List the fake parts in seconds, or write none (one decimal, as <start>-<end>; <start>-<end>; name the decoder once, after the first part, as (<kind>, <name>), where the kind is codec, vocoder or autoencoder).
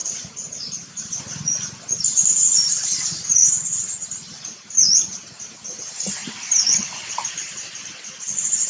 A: 0.0-1.2 (vocoder, BigVGAN v2); 2.1-3.8; 6.2-7.3